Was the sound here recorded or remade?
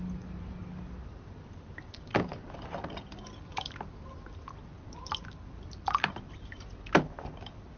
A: recorded